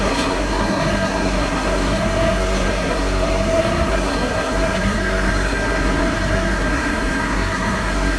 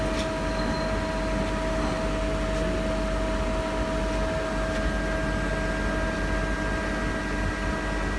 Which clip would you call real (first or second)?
second